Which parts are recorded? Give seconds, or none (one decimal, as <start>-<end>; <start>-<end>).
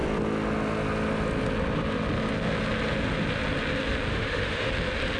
0.0-4.1; 4.7-5.2